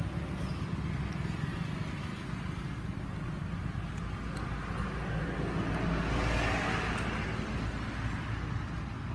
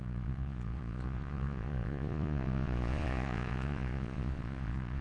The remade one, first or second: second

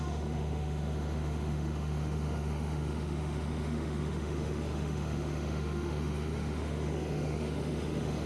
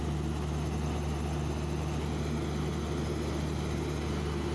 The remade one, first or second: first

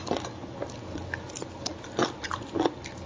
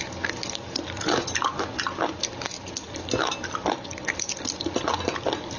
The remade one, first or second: second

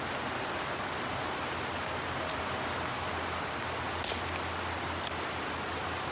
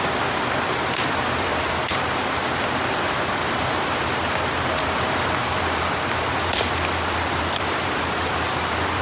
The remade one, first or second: second